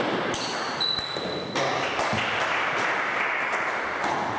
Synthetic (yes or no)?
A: no